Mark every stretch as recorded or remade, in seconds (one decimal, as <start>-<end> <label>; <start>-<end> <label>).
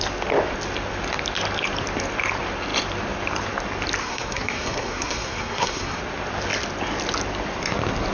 0.0-4.0 recorded; 4.0-6.0 remade; 6.0-8.1 recorded